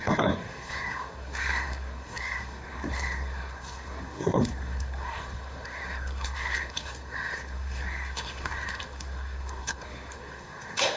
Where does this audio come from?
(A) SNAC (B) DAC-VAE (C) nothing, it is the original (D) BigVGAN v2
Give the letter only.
A